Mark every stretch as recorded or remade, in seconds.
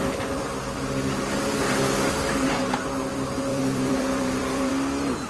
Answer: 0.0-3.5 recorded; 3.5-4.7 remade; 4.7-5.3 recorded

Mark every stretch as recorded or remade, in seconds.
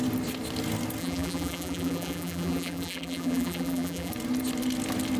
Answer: 0.0-1.0 recorded; 1.0-4.1 remade; 4.1-5.2 recorded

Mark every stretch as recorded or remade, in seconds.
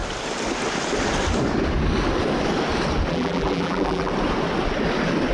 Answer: 0.0-3.1 recorded; 3.1-4.1 remade; 4.1-5.3 recorded